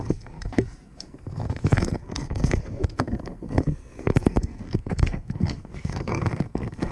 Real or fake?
fake